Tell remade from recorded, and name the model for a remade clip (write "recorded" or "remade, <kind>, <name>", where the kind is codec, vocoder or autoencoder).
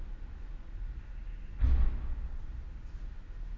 recorded